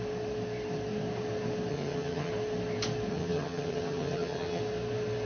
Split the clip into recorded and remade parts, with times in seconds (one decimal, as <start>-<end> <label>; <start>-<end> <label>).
0.0-1.7 recorded; 1.7-2.3 remade; 2.3-3.1 recorded; 3.1-4.6 remade; 4.6-5.3 recorded